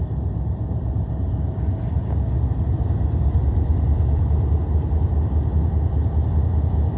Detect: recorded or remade recorded